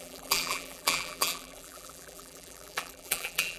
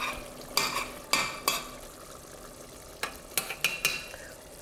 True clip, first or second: second